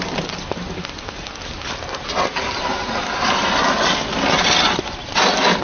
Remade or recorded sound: recorded